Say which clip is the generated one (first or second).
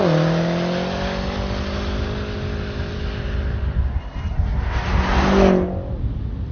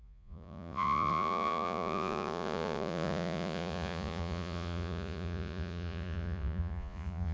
second